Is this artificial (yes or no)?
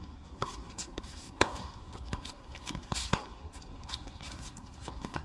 yes